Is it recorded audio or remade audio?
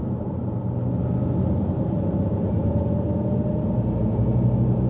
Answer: recorded